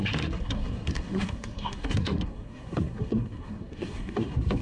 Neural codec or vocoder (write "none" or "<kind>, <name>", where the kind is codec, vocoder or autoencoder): codec, SNAC